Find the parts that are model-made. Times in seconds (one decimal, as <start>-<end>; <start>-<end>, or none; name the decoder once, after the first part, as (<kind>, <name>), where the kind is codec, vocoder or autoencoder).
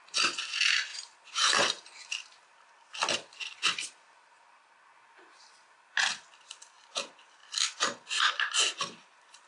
none